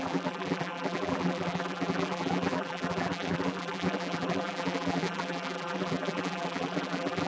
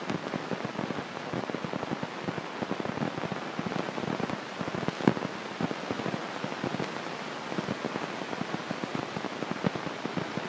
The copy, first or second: first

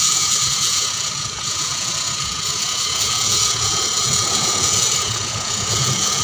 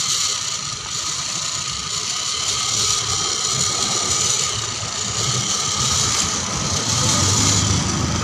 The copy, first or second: first